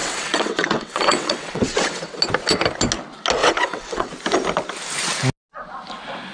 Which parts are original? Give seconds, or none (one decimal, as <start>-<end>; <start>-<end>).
2.2-3.4; 4.1-6.3